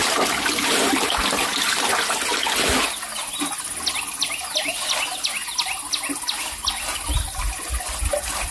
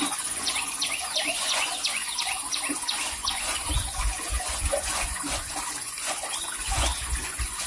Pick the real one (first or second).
first